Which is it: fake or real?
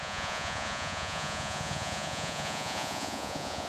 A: fake